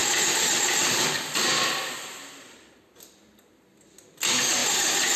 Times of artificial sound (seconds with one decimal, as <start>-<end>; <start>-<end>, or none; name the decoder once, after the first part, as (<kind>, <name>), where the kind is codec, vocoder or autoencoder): 4.6-5.2 (vocoder, BigVGAN v2)